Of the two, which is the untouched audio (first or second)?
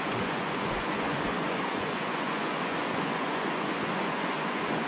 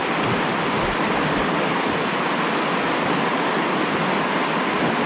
second